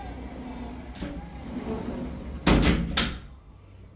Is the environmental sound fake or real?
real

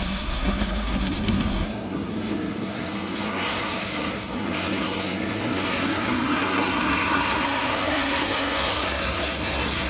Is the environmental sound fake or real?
fake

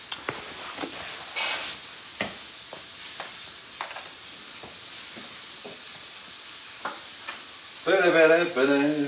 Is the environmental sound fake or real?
real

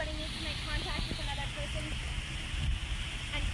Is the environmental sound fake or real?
real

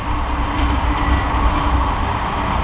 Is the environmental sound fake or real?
real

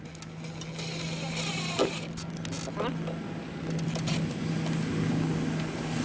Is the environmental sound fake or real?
real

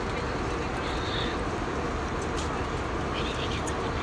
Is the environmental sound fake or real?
real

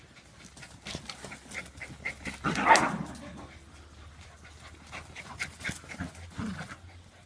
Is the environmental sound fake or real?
real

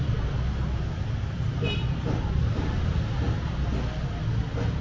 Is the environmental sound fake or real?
real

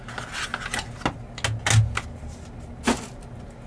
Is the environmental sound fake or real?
real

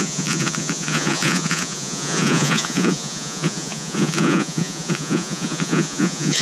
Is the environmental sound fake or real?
fake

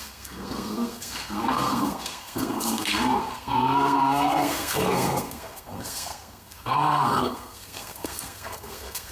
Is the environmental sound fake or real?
fake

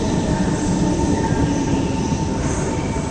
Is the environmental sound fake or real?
real